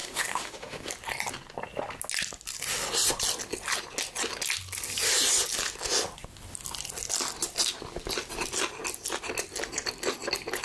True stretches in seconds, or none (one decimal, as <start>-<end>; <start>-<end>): 0.9-10.6